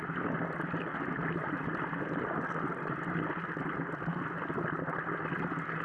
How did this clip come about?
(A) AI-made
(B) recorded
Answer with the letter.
B